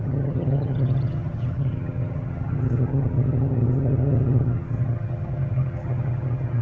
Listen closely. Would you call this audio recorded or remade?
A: remade